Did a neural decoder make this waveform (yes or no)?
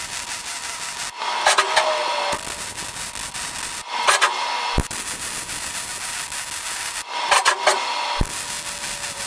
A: no